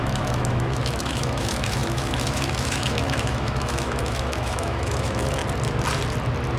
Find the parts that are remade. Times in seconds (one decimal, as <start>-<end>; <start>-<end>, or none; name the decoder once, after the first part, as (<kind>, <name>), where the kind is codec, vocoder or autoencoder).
0.0-5.4 (autoencoder, DAC-VAE)